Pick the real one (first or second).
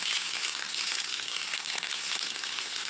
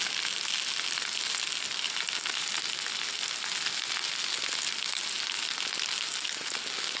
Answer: second